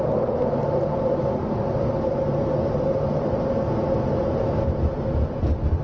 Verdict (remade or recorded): recorded